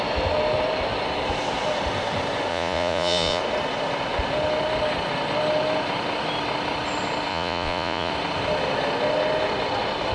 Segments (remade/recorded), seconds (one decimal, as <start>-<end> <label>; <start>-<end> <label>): 0.0-2.5 recorded; 2.5-3.4 remade; 3.4-7.3 recorded; 7.3-8.1 remade; 8.1-10.1 recorded